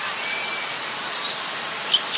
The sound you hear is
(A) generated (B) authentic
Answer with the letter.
A